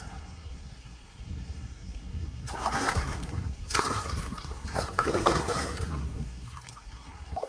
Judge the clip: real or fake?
fake